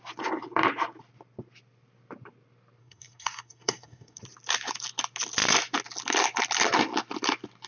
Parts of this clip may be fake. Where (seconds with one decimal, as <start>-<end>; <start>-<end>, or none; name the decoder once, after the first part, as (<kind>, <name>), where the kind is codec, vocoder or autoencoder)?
2.8-4.2 (codec, SNAC)